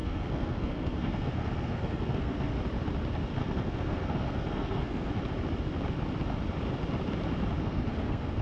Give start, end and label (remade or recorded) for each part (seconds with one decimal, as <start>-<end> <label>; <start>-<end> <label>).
0.0-2.6 remade; 2.6-3.4 recorded; 3.4-5.1 remade; 5.1-7.6 recorded; 7.6-8.4 remade